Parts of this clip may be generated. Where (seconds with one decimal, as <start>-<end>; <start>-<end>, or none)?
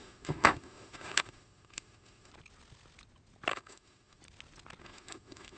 0.0-2.3; 3.5-4.2; 4.8-5.6